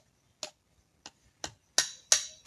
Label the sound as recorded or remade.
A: recorded